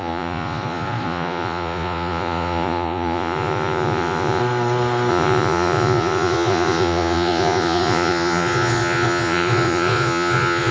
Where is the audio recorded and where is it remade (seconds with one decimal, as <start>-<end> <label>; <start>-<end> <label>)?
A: 0.0-4.4 remade; 4.4-5.1 recorded; 5.1-10.7 remade